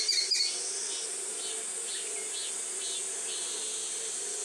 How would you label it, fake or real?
real